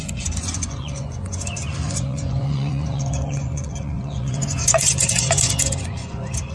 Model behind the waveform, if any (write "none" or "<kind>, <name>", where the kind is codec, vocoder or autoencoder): vocoder, Vocos